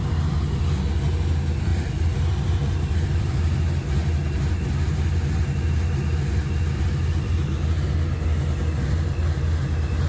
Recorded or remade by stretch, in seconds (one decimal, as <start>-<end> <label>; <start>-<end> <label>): 0.0-1.7 recorded; 1.7-3.6 remade; 3.6-10.1 recorded